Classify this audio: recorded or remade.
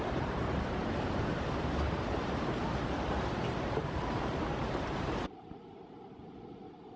remade